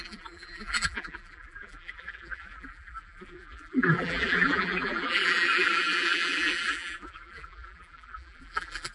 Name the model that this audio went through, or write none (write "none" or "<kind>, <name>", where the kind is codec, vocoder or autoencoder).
vocoder, BigVGAN v2